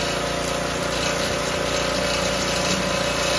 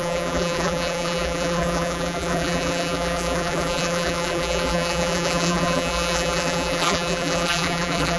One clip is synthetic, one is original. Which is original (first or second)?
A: first